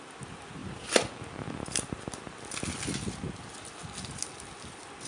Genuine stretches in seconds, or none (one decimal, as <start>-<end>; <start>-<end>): 0.0-5.1